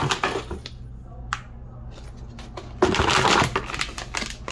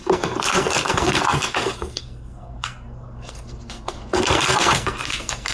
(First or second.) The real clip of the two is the first